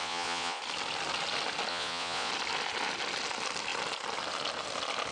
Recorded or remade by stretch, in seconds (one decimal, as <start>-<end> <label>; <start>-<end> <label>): 0.0-0.6 remade; 0.6-1.7 recorded; 1.7-2.3 remade; 2.3-5.1 recorded